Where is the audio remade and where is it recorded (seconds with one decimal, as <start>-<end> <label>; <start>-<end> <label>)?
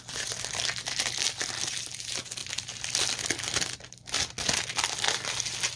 0.0-5.8 recorded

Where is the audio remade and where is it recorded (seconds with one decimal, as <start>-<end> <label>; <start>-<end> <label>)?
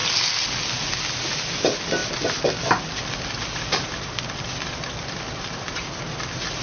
0.0-2.0 recorded; 2.0-6.0 remade; 6.0-6.6 recorded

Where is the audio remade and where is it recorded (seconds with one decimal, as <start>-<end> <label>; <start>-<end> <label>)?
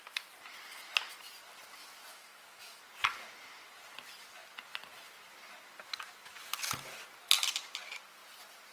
0.0-2.1 recorded; 2.1-2.8 remade; 2.8-8.7 recorded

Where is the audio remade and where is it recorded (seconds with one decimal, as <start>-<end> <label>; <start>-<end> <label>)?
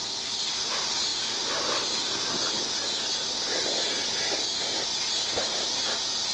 0.0-6.3 recorded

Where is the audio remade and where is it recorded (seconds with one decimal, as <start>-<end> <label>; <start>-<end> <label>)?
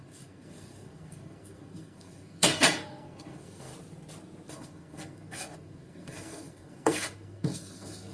0.0-3.7 remade; 3.7-4.5 recorded; 4.5-8.1 remade